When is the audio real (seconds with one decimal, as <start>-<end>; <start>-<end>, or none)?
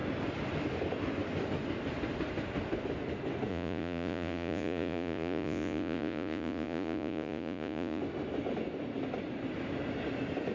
0.0-3.5; 8.0-10.5